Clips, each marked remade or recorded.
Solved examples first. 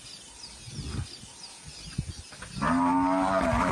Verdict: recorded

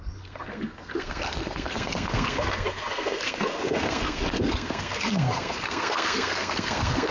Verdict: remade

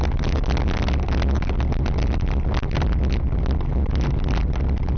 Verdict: recorded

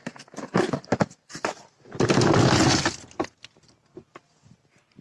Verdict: recorded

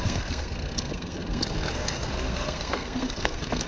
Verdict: remade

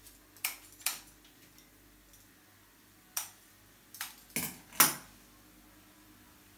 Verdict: recorded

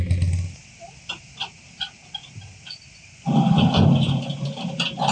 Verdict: recorded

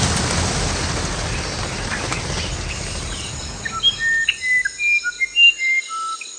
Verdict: recorded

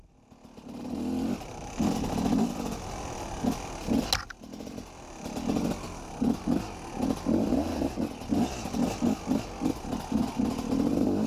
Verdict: recorded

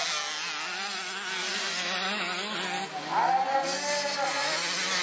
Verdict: recorded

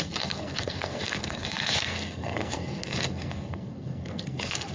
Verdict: remade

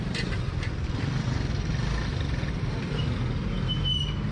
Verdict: recorded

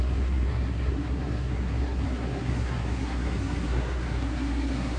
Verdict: remade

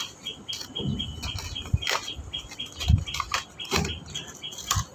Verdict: recorded